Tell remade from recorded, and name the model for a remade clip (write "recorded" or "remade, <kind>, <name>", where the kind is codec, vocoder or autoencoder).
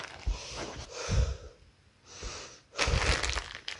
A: recorded